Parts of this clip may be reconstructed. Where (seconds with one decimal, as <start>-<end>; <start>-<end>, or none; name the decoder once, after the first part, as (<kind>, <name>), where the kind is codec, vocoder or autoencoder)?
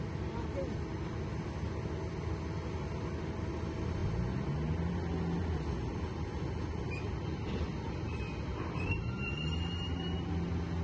none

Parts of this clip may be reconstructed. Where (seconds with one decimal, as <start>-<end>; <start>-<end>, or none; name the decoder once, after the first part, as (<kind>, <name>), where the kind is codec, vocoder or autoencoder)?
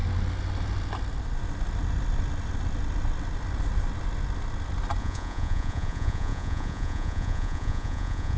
5.0-8.4 (vocoder, Vocos)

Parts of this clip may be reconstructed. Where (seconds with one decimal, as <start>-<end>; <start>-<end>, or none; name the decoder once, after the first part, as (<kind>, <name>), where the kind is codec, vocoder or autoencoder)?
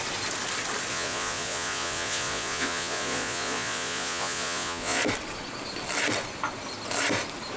0.9-5.0 (vocoder, Vocos)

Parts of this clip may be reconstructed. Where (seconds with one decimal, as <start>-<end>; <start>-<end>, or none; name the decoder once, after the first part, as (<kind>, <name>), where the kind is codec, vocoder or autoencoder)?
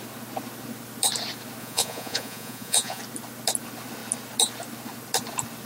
1.6-3.0 (vocoder, Vocos)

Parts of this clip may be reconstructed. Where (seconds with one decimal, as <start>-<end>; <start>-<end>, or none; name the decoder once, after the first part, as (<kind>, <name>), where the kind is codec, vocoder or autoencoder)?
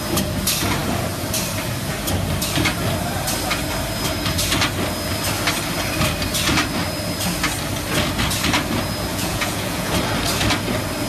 9.1-9.9 (vocoder, Vocos)